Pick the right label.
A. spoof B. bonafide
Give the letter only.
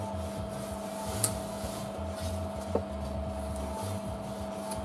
A